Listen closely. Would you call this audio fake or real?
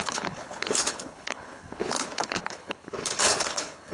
fake